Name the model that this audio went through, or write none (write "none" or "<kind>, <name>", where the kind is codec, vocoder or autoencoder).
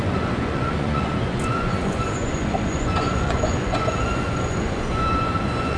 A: vocoder, Vocos